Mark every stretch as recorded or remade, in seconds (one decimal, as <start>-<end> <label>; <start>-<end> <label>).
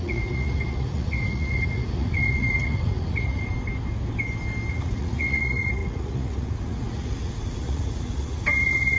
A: 0.0-3.5 remade; 3.5-4.7 recorded; 4.7-9.0 remade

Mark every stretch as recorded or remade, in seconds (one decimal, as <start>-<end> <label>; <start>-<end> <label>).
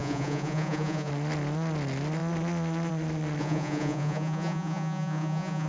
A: 0.0-1.1 remade; 1.1-3.4 recorded; 3.4-5.7 remade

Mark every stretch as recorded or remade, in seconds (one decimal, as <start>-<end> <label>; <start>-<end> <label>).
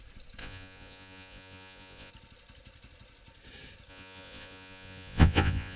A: 0.0-0.4 recorded; 0.4-2.1 remade; 2.1-3.9 recorded; 3.9-5.8 remade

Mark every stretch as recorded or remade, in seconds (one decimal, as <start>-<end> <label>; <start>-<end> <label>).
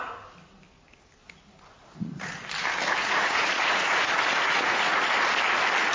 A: 0.0-1.8 recorded; 1.8-2.4 remade; 2.4-3.0 recorded; 3.0-5.1 remade; 5.1-5.9 recorded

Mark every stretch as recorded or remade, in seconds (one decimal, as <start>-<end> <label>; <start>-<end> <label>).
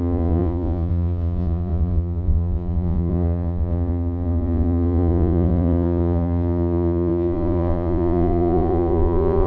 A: 0.0-9.5 remade